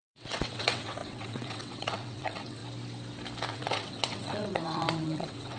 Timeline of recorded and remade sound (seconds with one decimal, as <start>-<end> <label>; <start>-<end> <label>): 0.0-2.6 remade; 2.6-3.5 recorded; 3.5-5.6 remade